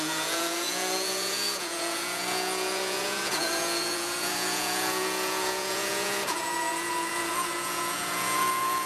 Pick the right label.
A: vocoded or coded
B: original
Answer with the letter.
A